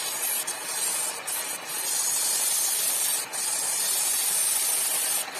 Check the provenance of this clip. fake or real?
real